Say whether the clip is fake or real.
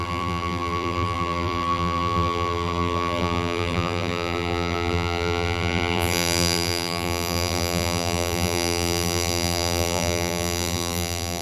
fake